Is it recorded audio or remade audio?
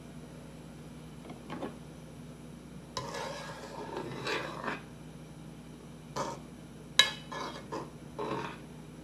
recorded